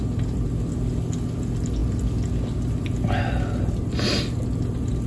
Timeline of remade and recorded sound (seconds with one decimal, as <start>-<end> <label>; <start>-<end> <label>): 0.0-5.1 recorded